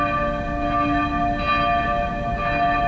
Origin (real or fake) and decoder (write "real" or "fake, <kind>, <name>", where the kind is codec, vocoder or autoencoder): real